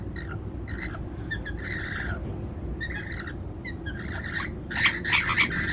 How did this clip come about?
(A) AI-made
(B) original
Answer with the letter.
B